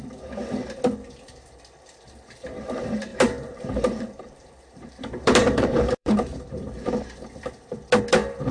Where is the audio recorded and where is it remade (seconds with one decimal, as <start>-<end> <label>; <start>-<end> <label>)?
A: 0.0-3.1 recorded; 3.1-6.9 remade; 6.9-8.5 recorded